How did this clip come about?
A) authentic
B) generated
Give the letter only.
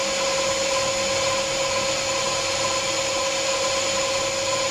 A